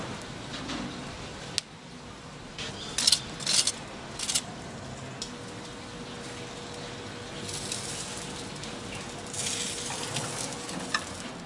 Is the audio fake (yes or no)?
no